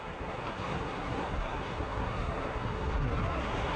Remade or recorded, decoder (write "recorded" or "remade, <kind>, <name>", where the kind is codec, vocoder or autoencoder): remade, codec, SNAC